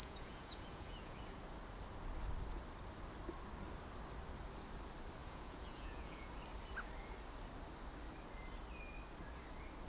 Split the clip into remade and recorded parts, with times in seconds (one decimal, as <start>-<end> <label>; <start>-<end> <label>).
0.0-1.2 remade; 1.2-5.2 recorded; 5.2-6.3 remade; 6.3-9.9 recorded